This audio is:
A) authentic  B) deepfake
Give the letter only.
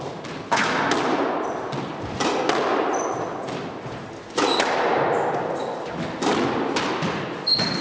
A